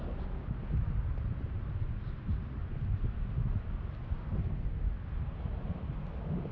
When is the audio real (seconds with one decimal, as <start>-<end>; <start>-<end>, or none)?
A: 0.0-6.5